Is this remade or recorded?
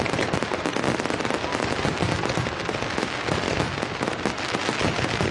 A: recorded